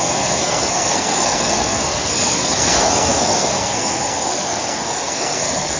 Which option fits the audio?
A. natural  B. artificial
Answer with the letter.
B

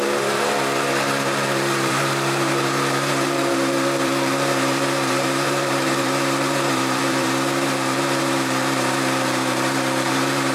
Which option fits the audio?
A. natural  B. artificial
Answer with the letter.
B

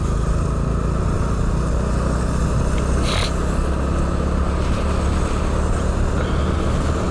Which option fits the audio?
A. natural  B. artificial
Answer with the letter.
A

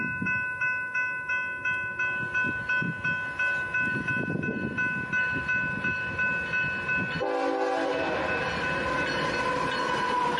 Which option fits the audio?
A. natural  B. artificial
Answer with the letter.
A